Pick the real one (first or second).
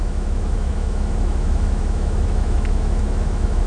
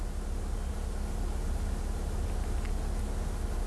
second